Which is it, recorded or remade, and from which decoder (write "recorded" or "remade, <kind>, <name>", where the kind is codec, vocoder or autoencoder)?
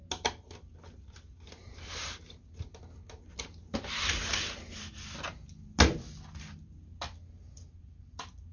recorded